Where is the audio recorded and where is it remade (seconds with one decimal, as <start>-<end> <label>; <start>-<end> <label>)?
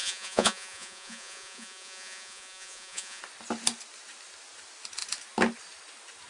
0.0-3.2 remade; 3.2-6.3 recorded